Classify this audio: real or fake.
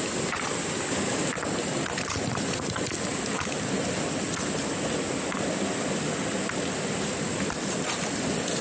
real